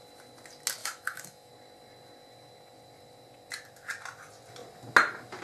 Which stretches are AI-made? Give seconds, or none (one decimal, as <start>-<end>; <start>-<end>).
0.8-1.5